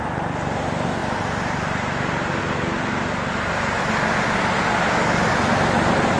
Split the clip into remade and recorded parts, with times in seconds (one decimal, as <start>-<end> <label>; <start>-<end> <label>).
0.0-6.2 recorded